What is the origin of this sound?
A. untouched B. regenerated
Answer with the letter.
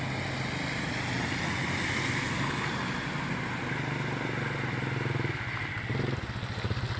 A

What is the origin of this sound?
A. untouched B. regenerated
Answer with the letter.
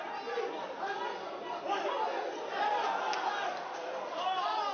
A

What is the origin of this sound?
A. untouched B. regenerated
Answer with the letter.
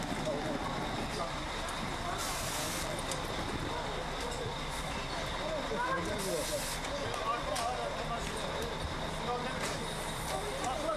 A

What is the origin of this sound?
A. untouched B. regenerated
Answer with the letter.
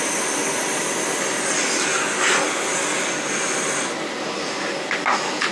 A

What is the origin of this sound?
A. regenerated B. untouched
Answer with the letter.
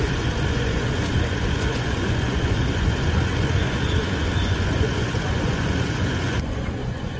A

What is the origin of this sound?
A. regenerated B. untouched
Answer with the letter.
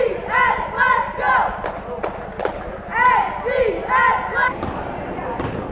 B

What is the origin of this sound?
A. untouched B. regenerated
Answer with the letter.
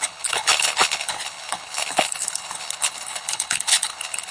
B